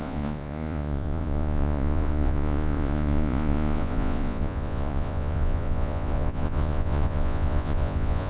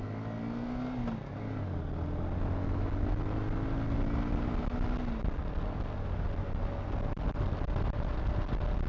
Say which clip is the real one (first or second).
second